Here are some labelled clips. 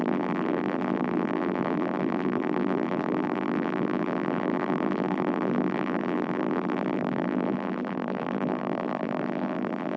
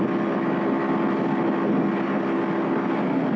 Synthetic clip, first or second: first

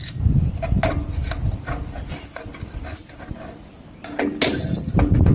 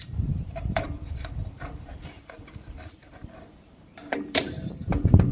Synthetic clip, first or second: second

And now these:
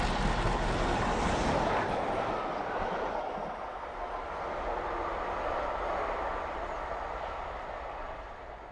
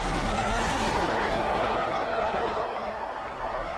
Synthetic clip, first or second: second